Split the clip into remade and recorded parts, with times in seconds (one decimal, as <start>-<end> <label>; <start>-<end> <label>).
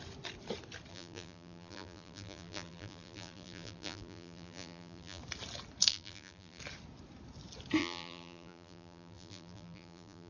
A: 0.0-0.9 recorded; 0.9-5.2 remade; 5.2-5.9 recorded; 5.9-6.6 remade; 6.6-7.8 recorded; 7.8-10.3 remade